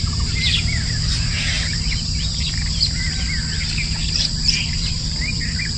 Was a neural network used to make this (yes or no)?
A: no